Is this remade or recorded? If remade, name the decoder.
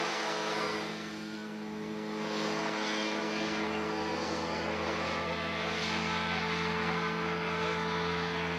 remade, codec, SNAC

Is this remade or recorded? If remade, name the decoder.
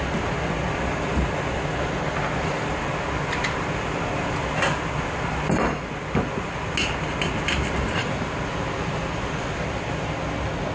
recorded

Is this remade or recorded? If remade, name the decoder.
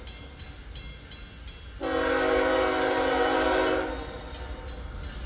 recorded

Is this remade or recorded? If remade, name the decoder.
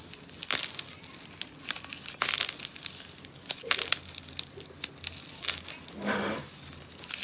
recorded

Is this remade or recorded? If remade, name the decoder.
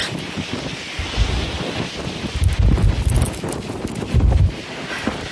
recorded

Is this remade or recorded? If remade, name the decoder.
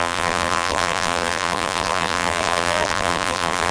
remade, vocoder, BigVGAN v2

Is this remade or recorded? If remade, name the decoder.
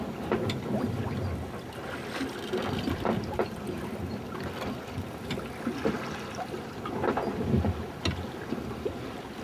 recorded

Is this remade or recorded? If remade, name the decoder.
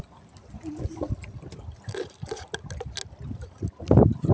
recorded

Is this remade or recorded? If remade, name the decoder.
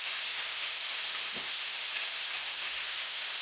remade, autoencoder, DAC-VAE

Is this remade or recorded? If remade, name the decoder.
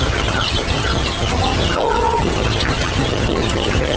remade, vocoder, HiFi-GAN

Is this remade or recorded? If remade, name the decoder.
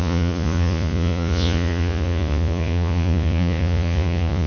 remade, vocoder, Vocos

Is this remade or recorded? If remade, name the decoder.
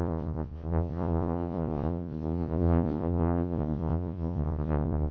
remade, vocoder, Vocos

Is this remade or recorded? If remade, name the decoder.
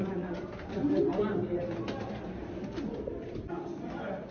remade, vocoder, BigVGAN v2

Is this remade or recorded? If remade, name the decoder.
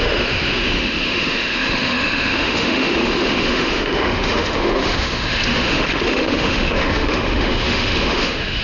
remade, autoencoder, DAC-VAE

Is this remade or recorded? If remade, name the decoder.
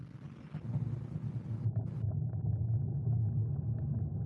recorded